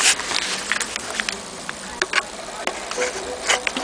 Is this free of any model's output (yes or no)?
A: yes